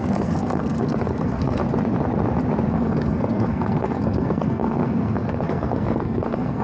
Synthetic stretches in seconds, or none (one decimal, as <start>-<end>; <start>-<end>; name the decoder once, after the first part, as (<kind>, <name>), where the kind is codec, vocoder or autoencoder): 0.0-1.6 (codec, SNAC); 2.7-6.6